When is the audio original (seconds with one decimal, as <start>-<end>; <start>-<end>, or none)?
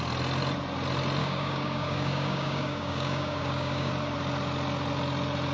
0.0-1.2; 3.9-5.5